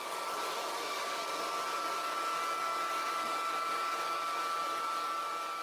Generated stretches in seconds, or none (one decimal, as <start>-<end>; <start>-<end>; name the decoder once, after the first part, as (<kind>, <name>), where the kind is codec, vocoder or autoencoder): 0.0-5.6 (codec, DAC)